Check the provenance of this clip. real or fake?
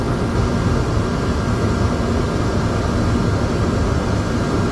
real